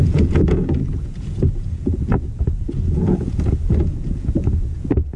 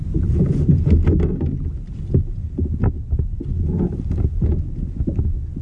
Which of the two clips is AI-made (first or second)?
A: first